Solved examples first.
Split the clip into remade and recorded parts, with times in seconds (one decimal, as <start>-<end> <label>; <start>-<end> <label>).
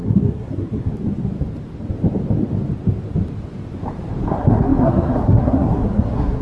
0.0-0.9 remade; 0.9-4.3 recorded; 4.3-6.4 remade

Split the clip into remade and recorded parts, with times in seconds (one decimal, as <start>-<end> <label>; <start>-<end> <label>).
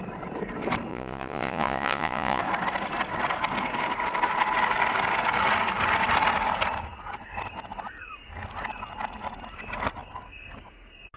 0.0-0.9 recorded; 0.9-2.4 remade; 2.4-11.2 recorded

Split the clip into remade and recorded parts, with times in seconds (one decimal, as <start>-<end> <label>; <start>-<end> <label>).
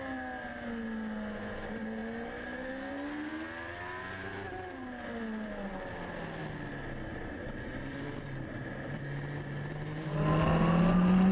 0.0-11.3 recorded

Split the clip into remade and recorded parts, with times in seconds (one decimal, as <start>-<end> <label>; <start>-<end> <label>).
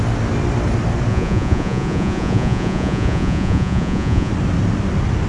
0.0-1.1 recorded; 1.1-4.3 remade; 4.3-5.3 recorded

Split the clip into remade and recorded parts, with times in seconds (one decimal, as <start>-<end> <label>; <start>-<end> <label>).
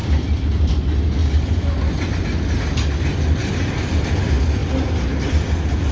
0.0-0.7 remade; 0.7-1.2 recorded; 1.2-2.2 remade; 2.2-4.6 recorded; 4.6-5.4 remade; 5.4-5.9 recorded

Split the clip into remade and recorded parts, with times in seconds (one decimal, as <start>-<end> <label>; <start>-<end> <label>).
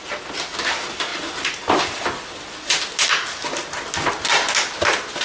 0.0-5.2 recorded